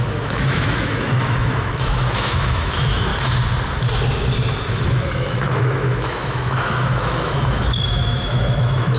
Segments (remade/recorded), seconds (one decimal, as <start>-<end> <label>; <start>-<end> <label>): 0.0-3.1 remade; 3.1-4.7 recorded; 4.7-9.0 remade